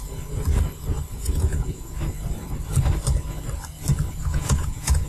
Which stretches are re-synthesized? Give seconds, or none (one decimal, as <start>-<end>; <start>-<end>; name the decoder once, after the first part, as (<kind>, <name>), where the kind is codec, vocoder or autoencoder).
1.1-2.0 (vocoder, Vocos); 4.2-5.1

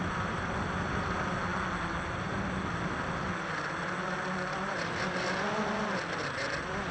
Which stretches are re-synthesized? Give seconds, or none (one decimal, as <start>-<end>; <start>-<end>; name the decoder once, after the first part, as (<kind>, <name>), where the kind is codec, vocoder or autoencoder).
none

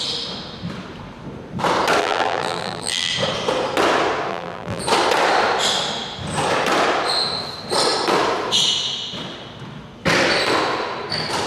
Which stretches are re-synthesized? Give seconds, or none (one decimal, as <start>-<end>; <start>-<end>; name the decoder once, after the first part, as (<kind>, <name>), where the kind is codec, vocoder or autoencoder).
2.0-3.1 (vocoder, BigVGAN v2); 4.3-4.8

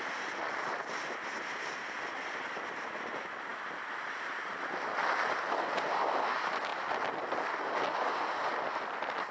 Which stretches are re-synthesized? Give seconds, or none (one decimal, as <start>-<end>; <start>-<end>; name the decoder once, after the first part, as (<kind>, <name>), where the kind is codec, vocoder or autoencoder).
none